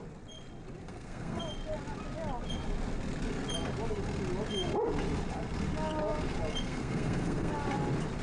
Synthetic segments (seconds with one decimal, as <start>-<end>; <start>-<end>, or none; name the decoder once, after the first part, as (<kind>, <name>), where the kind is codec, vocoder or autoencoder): 0.8-1.4 (codec, SNAC); 6.6-7.5

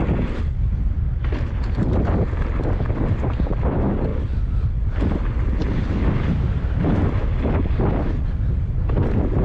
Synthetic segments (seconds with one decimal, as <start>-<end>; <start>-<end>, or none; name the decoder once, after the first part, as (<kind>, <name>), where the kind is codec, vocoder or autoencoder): none

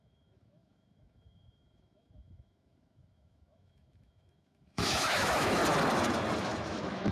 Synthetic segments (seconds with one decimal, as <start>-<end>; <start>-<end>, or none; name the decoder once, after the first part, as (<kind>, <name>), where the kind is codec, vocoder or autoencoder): 0.0-5.6 (autoencoder, DAC-VAE); 6.4-7.1

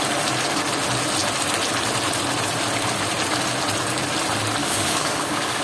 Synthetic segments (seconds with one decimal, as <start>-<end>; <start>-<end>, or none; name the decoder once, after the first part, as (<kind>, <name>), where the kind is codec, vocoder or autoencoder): 4.6-5.6 (codec, DAC)

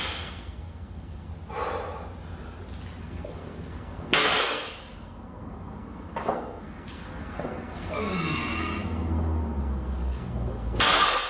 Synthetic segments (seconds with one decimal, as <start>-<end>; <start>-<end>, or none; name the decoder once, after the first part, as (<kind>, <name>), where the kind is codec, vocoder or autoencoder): 0.0-1.3 (codec, SNAC); 3.0-11.3